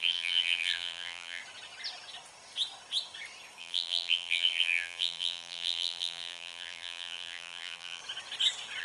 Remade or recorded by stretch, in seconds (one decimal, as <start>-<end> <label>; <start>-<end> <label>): 0.0-1.4 remade; 1.4-3.6 recorded; 3.6-8.0 remade; 8.0-8.8 recorded